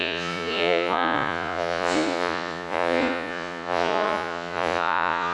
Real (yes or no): no